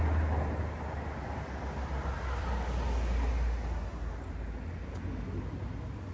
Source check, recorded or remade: recorded